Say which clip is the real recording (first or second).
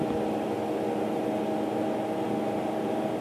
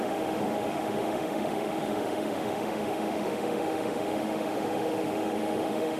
first